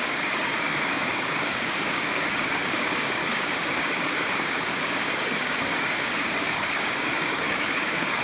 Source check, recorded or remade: remade